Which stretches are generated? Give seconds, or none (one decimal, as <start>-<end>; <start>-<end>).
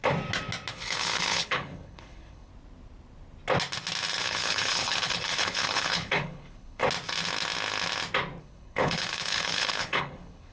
0.7-2.5; 4.2-6.8; 8.4-10.5